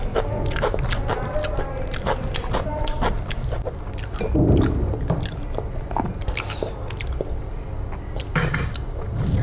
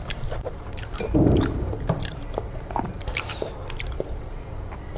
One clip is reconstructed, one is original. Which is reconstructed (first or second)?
second